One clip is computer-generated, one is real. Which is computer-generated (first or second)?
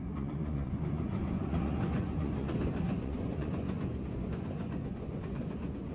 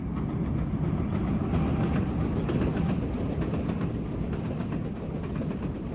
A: first